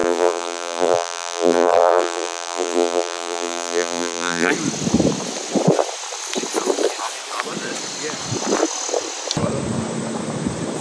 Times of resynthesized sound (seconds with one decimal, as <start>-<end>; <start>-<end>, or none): 0.0-4.5